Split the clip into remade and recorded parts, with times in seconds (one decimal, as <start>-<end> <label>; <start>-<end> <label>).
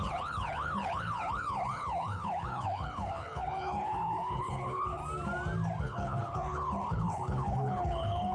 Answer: 0.0-5.0 remade; 5.0-5.8 recorded; 5.8-8.3 remade